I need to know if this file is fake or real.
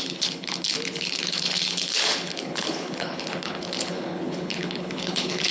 fake